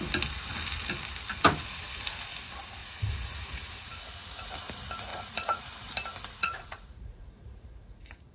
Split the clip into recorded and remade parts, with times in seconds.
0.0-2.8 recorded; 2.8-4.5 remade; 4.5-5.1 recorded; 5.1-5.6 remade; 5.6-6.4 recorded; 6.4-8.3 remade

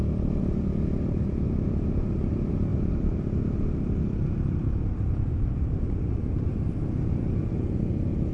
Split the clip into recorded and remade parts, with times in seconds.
0.0-2.7 recorded; 2.7-6.2 remade; 6.2-8.3 recorded

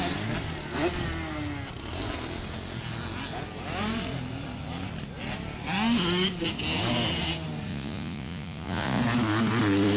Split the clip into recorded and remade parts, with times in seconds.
0.0-7.7 recorded; 7.7-9.0 remade; 9.0-10.0 recorded

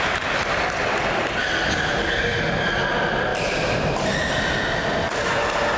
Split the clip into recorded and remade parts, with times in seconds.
0.0-3.3 recorded; 3.3-3.8 remade; 3.8-5.8 recorded